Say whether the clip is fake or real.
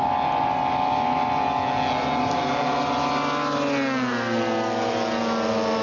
real